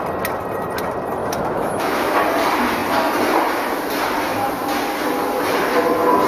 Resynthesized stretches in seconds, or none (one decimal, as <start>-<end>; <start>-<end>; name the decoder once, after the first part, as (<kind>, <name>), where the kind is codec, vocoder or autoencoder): 1.2-2.2 (autoencoder, DAC-VAE)